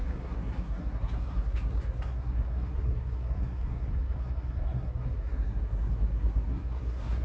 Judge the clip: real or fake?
fake